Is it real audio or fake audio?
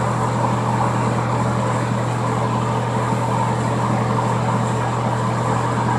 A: real